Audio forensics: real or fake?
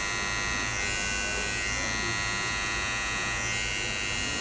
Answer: real